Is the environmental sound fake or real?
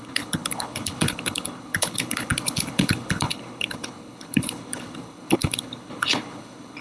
fake